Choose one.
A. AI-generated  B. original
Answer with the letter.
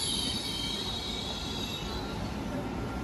B